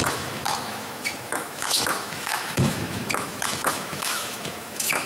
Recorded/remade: remade